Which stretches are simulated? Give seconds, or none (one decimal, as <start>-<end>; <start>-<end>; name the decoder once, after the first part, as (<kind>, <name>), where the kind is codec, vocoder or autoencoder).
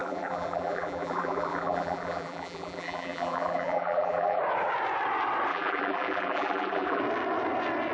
0.0-4.4 (vocoder, BigVGAN v2); 5.5-7.0